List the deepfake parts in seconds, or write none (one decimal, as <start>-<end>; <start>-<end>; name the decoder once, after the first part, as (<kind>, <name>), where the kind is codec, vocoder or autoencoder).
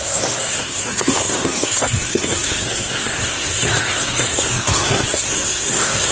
0.0-6.1 (codec, SNAC)